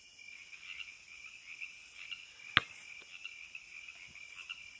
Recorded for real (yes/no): yes